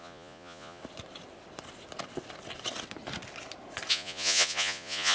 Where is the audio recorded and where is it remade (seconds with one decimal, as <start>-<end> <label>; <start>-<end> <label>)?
0.0-0.8 remade; 0.8-3.9 recorded; 3.9-5.1 remade